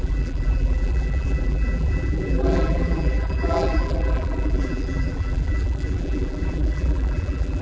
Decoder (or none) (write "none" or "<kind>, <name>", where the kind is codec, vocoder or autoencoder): vocoder, BigVGAN v2